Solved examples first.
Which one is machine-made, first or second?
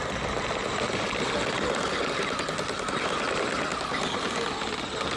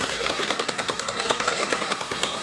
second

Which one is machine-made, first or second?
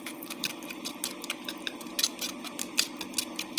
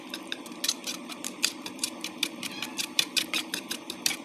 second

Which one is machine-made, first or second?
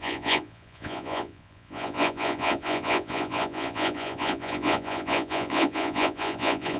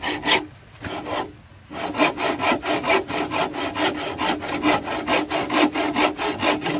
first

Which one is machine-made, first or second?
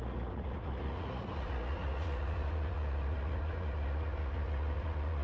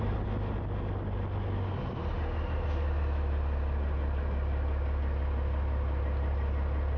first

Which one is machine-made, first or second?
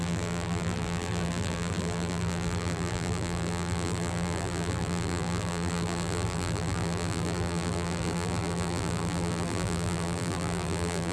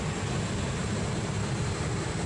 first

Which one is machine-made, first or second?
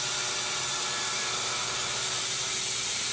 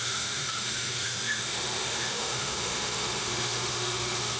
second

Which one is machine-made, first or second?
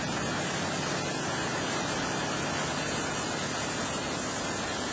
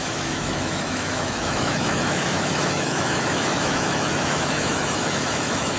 second